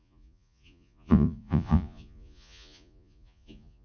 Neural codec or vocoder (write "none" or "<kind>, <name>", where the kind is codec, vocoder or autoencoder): vocoder, Vocos